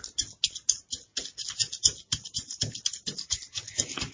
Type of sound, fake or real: real